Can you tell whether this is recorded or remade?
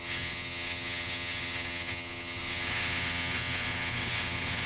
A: remade